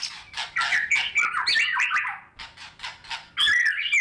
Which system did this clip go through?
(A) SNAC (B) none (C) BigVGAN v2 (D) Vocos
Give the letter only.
B